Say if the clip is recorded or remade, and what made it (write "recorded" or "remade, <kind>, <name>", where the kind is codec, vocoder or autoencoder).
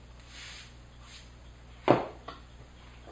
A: recorded